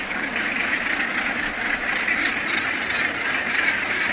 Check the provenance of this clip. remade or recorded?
recorded